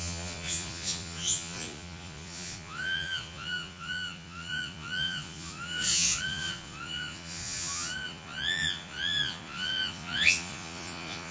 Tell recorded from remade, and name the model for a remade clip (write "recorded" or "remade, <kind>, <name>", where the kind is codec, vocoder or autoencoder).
remade, vocoder, Vocos